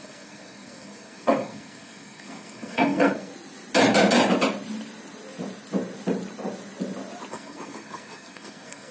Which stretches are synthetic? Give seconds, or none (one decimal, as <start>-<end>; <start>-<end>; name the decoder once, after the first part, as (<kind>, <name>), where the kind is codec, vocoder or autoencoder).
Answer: 0.0-3.3 (codec, SNAC); 7.3-8.9